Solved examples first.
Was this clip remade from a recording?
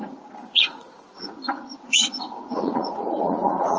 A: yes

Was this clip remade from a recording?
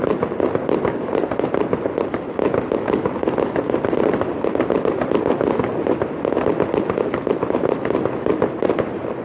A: no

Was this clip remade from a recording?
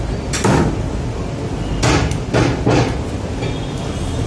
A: no